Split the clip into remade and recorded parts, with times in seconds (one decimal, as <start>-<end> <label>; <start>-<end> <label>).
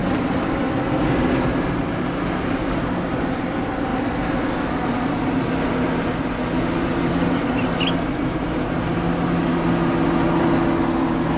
0.0-11.4 recorded